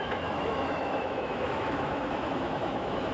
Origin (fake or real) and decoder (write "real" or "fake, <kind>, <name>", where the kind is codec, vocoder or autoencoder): fake, autoencoder, DAC-VAE